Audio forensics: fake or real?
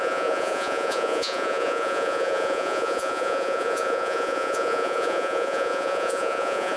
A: fake